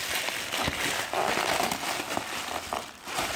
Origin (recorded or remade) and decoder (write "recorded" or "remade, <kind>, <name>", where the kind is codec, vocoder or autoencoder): recorded